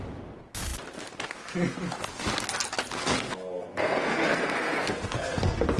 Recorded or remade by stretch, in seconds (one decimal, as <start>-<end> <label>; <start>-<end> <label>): 0.0-3.0 recorded; 3.0-5.8 remade